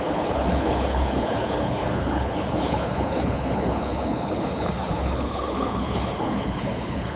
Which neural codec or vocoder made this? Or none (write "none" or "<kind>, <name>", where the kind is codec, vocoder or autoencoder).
codec, HILCodec